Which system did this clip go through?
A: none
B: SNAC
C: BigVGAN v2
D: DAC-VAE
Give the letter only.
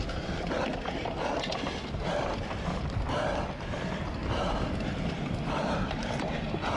C